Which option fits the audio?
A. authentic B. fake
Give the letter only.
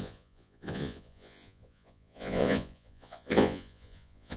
B